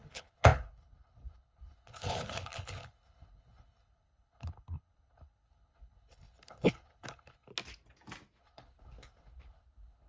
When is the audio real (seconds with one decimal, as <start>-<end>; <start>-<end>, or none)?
7.5-8.4